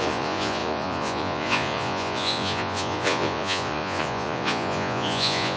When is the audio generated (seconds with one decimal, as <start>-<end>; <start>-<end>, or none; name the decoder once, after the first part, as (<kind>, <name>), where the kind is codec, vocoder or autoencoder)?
0.0-5.6 (vocoder, Vocos)